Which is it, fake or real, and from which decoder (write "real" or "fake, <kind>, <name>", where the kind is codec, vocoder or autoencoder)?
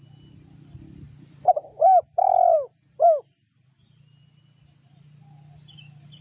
real